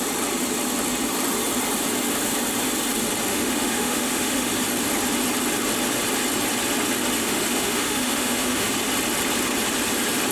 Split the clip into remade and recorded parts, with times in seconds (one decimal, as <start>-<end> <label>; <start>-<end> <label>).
0.0-3.3 recorded; 3.3-4.5 remade; 4.5-7.2 recorded; 7.2-8.7 remade; 8.7-10.3 recorded